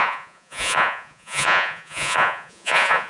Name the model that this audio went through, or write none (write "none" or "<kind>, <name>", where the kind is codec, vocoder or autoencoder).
vocoder, Vocos